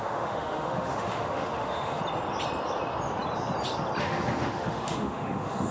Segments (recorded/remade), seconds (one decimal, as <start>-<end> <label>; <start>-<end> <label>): 0.0-2.0 remade; 2.0-4.0 recorded; 4.0-5.7 remade